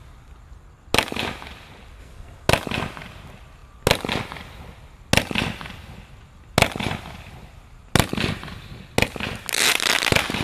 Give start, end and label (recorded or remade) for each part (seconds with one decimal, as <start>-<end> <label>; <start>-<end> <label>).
0.0-2.0 recorded; 2.0-2.5 remade; 2.5-10.4 recorded